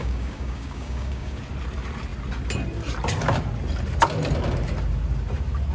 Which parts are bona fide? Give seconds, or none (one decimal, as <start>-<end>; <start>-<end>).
1.4-5.7